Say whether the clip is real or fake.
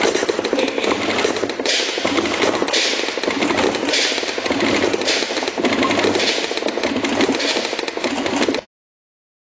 real